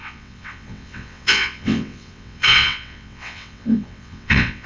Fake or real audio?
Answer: fake